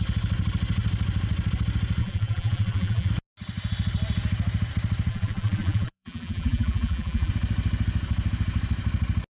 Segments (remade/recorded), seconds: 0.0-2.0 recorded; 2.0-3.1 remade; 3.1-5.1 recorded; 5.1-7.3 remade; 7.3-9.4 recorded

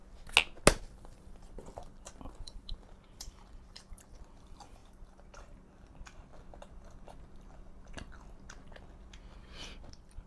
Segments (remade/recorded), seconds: 0.0-0.8 recorded; 0.8-6.3 remade; 6.3-9.9 recorded; 9.9-10.3 remade

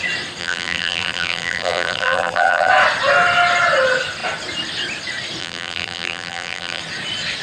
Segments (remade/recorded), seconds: 0.0-0.4 recorded; 0.4-2.7 remade; 2.7-5.4 recorded; 5.4-6.8 remade; 6.8-7.4 recorded

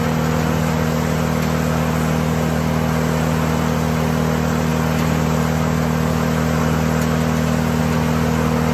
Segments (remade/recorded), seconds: 0.0-8.7 recorded

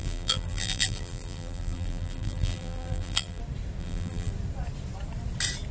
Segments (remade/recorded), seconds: 0.0-3.4 remade; 3.4-3.8 recorded; 3.8-4.3 remade; 4.3-5.7 recorded

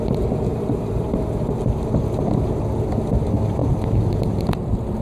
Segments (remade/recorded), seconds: 0.0-0.5 recorded; 0.5-1.9 remade; 1.9-3.6 recorded; 3.6-4.4 remade; 4.4-5.0 recorded

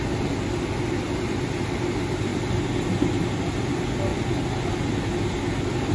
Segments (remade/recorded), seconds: 0.0-5.9 recorded

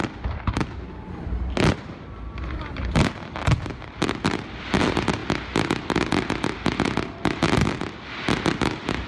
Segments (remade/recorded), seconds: 0.0-5.2 remade; 5.2-8.5 recorded; 8.5-9.1 remade